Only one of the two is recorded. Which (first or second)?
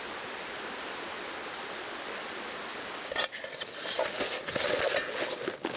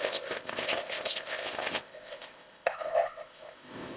first